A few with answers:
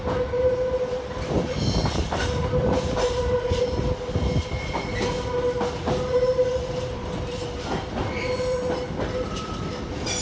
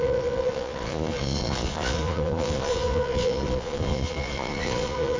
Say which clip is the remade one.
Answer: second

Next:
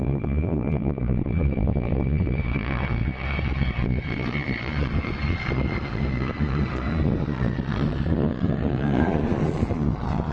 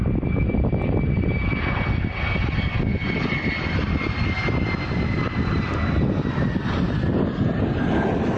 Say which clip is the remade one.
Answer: first